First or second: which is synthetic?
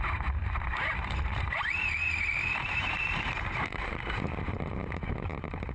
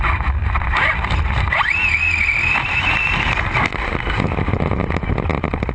first